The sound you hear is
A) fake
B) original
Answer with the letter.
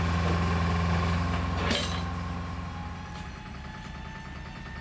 B